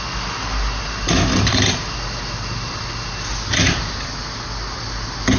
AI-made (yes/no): no